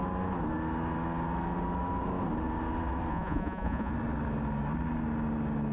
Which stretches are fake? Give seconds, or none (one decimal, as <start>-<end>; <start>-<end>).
3.1-3.9